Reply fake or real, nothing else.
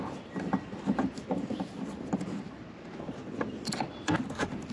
real